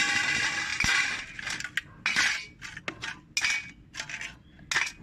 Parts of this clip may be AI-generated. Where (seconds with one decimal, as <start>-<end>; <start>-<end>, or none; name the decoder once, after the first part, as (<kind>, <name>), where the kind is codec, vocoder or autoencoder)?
none